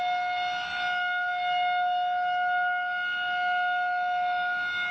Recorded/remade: recorded